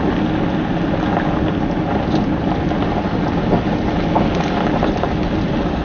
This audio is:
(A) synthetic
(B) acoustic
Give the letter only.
B